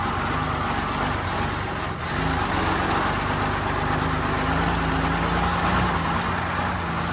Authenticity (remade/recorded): recorded